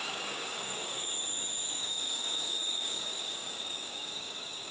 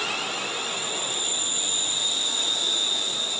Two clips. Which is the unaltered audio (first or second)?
second